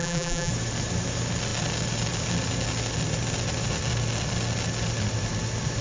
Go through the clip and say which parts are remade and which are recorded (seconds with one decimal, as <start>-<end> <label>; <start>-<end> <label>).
0.0-0.5 remade; 0.5-5.8 recorded